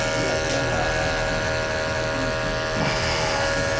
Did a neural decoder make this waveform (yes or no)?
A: no